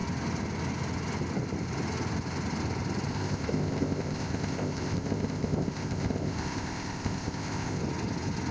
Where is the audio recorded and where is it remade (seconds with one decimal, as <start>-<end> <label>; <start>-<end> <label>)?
0.0-3.1 recorded; 3.1-7.8 remade; 7.8-8.5 recorded